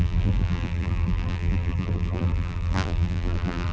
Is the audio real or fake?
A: fake